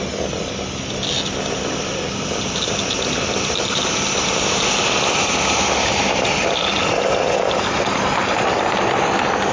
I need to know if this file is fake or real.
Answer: real